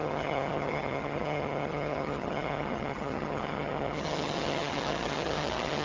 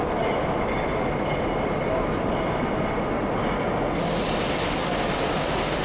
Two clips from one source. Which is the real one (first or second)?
second